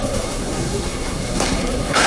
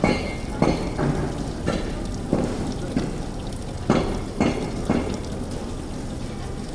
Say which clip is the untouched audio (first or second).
second